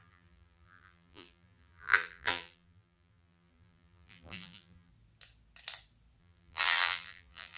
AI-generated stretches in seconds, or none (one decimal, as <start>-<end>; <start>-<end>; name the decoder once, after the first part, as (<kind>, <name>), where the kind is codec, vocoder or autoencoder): 0.0-4.9 (vocoder, BigVGAN v2); 6.2-7.6